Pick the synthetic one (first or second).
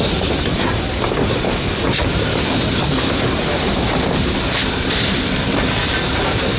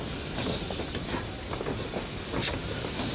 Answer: first